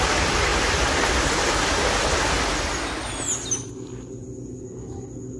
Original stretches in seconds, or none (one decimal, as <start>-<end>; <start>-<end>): 0.0-5.4